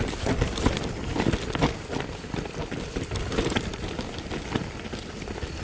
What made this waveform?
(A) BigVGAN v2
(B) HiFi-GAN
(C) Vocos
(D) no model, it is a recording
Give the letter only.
D